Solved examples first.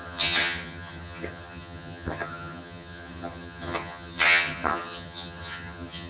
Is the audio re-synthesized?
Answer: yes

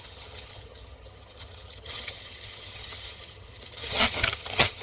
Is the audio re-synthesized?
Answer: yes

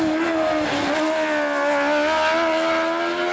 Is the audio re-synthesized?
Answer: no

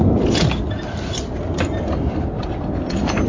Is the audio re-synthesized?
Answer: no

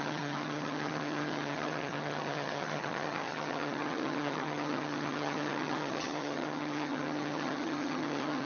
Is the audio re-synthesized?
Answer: yes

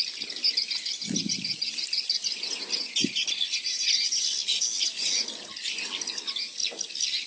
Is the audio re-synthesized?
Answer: no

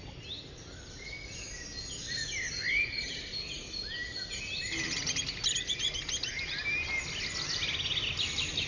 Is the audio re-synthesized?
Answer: no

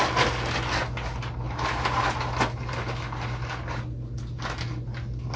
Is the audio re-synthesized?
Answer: no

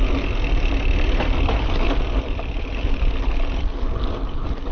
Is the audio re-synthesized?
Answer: no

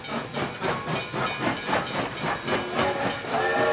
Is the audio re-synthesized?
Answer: no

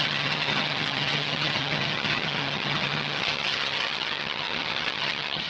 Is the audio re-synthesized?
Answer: yes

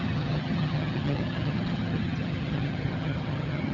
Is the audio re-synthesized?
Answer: yes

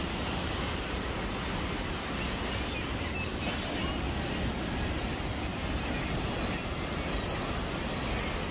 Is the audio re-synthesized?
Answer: no